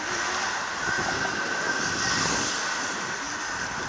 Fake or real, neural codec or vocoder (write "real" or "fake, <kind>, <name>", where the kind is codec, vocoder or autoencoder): real